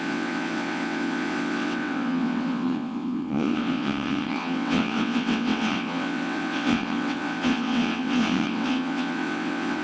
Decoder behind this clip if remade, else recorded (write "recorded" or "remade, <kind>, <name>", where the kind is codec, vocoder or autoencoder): remade, vocoder, WaveNeXt